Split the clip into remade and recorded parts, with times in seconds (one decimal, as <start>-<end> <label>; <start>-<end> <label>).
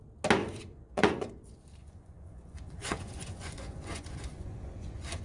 0.0-0.4 recorded; 0.4-1.3 remade; 1.3-1.8 recorded; 1.8-5.2 remade